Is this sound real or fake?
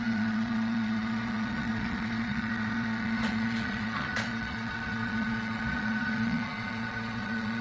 fake